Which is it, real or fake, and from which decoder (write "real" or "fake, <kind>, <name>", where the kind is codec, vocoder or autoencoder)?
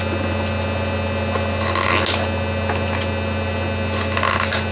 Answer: real